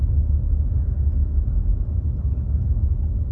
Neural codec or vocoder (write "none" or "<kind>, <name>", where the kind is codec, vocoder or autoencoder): none